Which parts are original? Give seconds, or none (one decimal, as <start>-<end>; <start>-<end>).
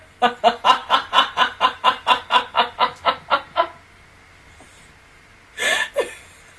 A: 0.0-6.6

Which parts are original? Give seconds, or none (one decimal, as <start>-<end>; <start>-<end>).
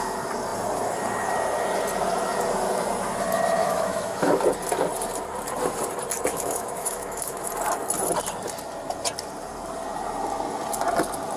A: 0.0-3.6; 4.4-6.3; 7.5-11.4